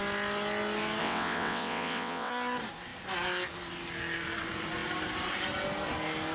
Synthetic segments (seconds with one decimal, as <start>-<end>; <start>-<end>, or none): 1.0-2.3